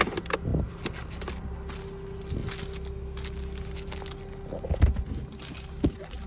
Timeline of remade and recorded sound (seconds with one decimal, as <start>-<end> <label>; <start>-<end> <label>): 0.0-6.3 recorded